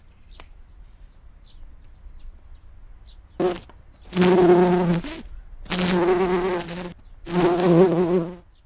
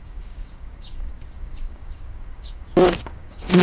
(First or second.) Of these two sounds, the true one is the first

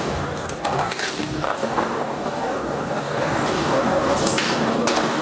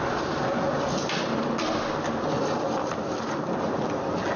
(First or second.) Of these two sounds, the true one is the second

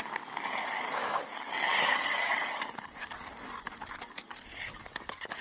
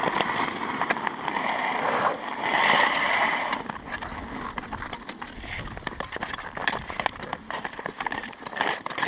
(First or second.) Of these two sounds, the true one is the second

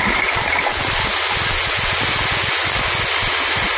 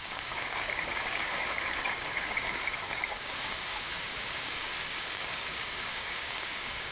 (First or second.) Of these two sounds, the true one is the first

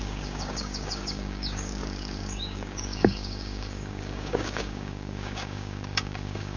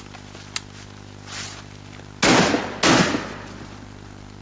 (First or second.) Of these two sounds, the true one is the second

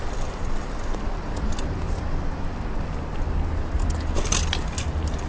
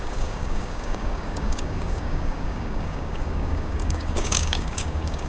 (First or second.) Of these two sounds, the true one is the first